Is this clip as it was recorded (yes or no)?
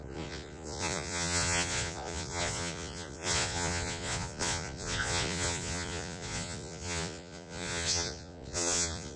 no